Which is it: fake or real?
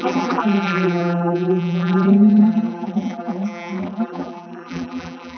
fake